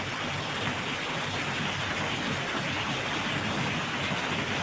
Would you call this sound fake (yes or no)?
no